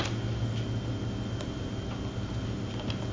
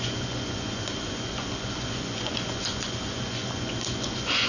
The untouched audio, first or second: first